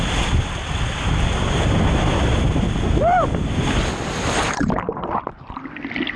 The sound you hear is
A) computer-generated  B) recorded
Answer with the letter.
B